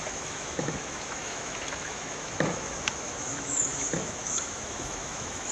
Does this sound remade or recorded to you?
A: remade